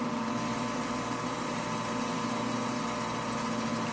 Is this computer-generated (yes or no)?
no